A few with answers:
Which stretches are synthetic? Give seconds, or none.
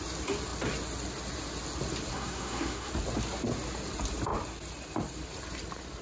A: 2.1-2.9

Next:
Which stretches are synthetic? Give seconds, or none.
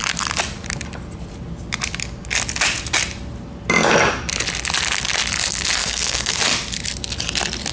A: 5.8-6.4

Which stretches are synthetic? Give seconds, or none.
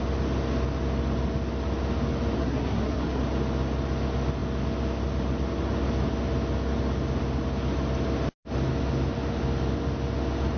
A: 2.4-3.2